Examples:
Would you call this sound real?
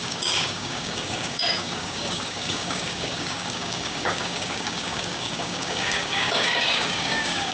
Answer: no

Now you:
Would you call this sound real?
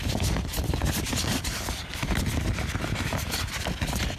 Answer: yes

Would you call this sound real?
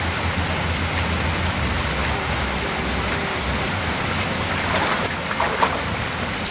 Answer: yes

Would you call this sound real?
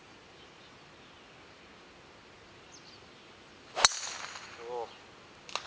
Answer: yes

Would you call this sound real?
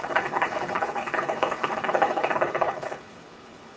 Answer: no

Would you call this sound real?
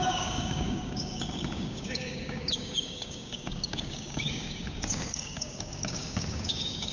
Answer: no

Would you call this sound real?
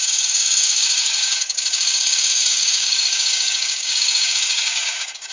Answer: no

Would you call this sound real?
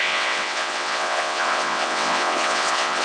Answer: no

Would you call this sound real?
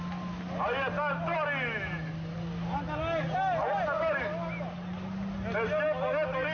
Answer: yes